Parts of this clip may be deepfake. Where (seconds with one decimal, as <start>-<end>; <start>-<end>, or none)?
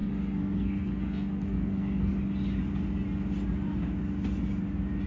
0.0-2.1